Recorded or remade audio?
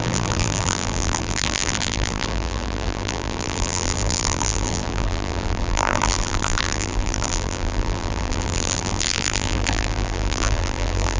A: remade